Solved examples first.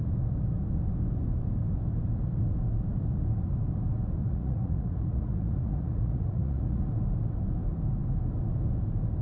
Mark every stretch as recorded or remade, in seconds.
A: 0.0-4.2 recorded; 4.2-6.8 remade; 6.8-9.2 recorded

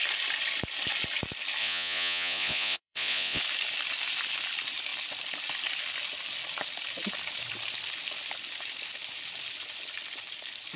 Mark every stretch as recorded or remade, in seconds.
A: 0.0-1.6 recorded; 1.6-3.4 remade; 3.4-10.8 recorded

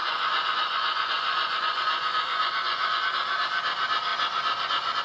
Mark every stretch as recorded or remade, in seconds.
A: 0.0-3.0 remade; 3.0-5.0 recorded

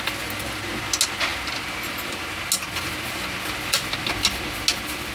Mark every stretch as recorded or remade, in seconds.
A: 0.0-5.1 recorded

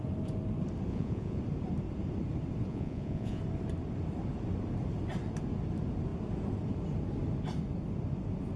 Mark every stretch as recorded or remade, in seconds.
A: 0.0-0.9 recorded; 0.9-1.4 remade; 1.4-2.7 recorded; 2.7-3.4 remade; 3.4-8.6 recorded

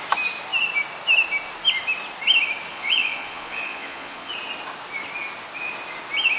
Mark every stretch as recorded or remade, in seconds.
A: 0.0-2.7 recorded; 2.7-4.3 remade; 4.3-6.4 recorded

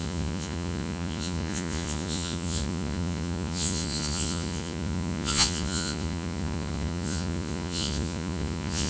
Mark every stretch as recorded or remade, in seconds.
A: 0.0-8.9 remade

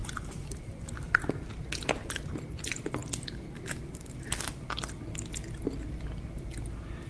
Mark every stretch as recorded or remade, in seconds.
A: 0.0-7.1 recorded